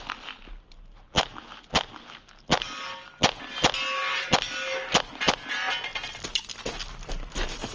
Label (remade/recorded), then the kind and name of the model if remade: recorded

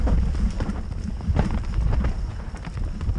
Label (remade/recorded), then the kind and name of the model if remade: recorded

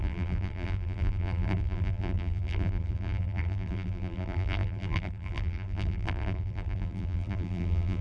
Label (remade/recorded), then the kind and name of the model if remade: remade, vocoder, BigVGAN v2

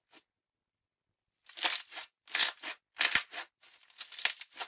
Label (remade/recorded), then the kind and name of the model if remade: recorded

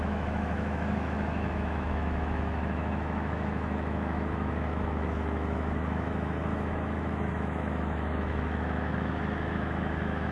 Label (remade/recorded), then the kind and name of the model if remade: remade, autoencoder, DAC-VAE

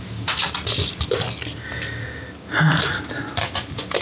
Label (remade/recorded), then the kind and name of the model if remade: recorded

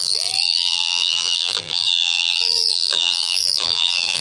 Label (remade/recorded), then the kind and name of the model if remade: remade, vocoder, BigVGAN v2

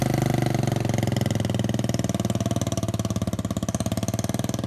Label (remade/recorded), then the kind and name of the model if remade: recorded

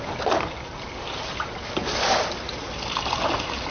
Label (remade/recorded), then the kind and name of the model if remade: recorded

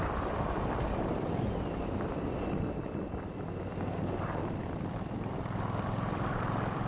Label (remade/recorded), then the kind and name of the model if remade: remade, vocoder, BigVGAN v2